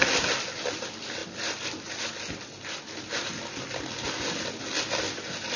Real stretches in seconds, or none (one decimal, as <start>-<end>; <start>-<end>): 0.0-5.6